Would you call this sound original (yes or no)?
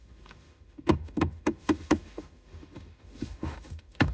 no